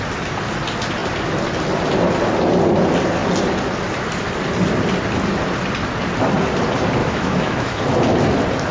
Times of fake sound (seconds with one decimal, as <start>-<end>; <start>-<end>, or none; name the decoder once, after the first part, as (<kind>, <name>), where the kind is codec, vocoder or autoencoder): 7.0-7.8 (autoencoder, DAC-VAE)